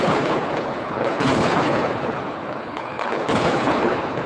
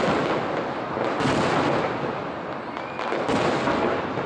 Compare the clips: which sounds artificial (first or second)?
first